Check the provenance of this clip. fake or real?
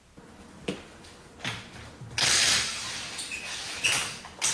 real